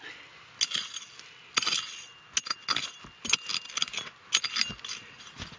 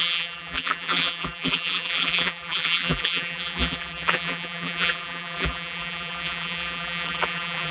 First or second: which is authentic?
first